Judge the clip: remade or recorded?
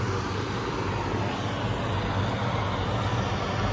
recorded